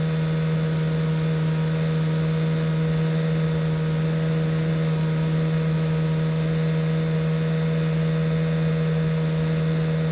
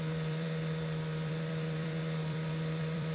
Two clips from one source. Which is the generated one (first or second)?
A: second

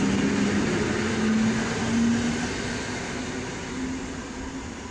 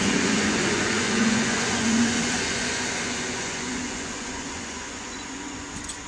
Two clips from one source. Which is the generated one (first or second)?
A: second